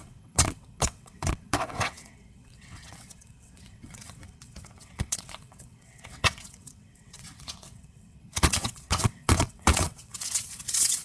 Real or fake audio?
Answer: fake